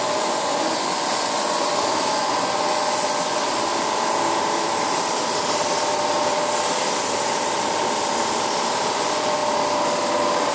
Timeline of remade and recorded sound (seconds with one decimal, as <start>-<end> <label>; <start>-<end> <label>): 0.0-3.7 remade; 3.7-8.9 recorded; 8.9-9.4 remade; 9.4-10.5 recorded